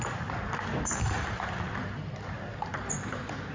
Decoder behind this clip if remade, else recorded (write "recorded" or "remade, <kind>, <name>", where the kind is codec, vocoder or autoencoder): recorded